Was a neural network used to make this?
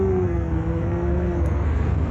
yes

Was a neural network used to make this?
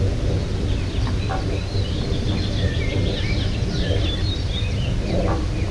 no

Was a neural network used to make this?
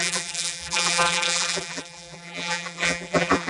yes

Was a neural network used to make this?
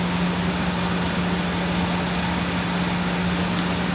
no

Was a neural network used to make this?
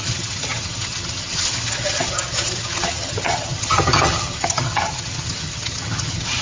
yes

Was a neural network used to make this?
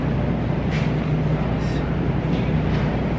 no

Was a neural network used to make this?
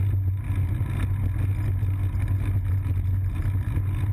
no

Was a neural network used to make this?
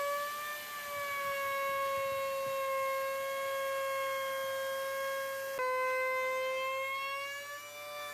no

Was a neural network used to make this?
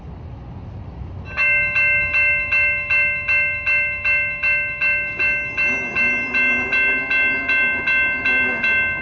no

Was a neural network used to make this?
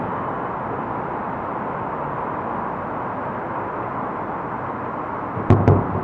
no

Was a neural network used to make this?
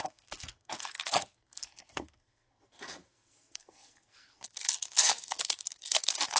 yes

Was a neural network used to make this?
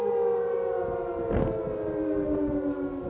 no